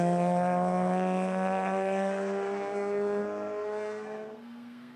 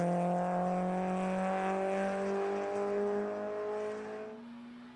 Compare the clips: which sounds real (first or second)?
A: second